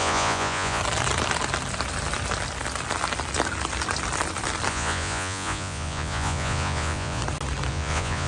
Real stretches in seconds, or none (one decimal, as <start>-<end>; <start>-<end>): 0.8-4.7; 7.2-7.7